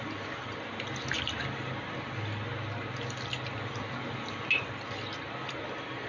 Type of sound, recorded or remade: recorded